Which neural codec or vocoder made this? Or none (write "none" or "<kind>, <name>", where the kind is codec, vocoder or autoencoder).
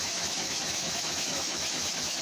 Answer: autoencoder, DAC-VAE